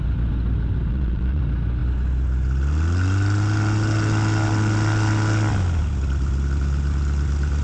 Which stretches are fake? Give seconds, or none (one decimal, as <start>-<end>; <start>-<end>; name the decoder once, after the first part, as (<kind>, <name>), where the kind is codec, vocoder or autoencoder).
0.9-1.4 (vocoder, Vocos)